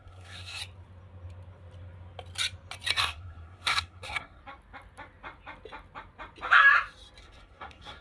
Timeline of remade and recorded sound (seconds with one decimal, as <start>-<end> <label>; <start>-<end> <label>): 0.0-0.6 remade; 0.6-3.0 recorded; 3.0-4.4 remade; 4.4-7.2 recorded; 7.2-8.0 remade